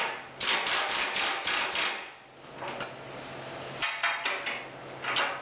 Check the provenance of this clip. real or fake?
real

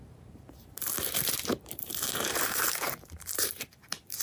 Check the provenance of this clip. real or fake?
fake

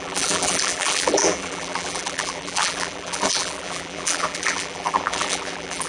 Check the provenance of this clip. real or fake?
fake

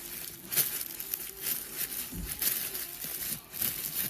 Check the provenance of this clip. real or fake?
real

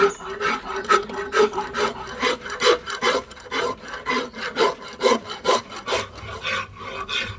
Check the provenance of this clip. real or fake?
real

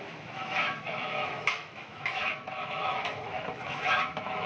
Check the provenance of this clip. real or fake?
fake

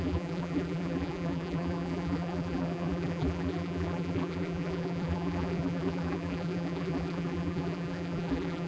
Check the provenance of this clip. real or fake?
fake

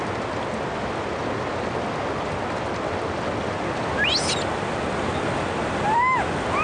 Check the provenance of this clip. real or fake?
real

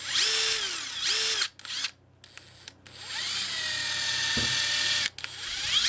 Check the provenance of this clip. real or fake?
real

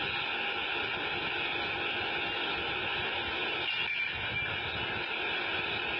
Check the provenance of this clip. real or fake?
real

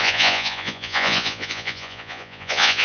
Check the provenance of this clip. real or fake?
fake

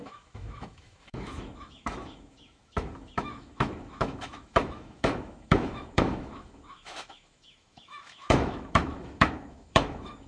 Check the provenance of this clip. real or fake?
fake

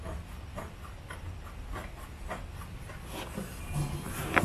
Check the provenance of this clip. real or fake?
real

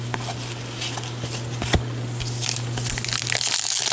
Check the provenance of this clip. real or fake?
real